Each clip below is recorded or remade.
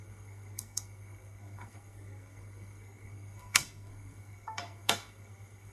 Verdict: remade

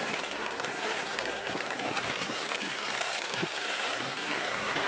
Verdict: remade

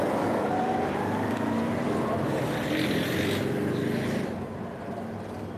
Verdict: recorded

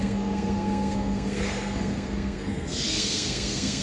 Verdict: remade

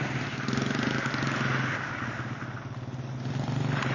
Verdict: recorded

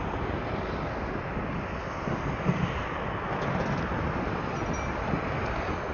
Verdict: recorded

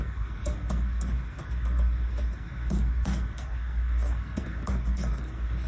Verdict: remade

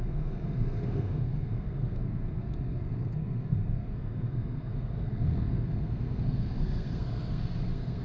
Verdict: remade